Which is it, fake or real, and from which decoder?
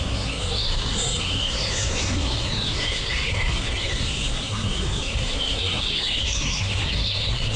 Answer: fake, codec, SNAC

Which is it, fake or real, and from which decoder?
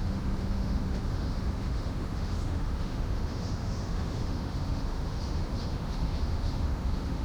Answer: fake, autoencoder, DAC-VAE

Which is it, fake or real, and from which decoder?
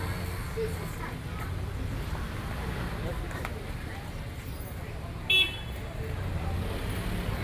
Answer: real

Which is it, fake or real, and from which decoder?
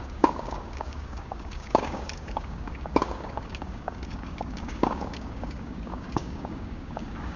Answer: fake, codec, DAC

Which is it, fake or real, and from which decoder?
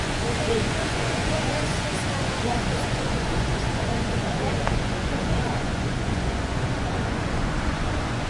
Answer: fake, vocoder, Vocos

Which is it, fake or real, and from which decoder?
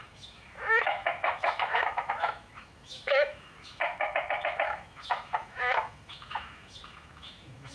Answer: fake, autoencoder, DAC-VAE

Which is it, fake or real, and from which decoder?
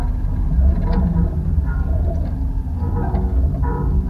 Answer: real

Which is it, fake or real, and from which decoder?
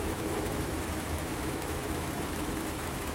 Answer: fake, autoencoder, DAC-VAE